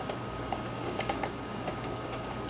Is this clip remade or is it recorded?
remade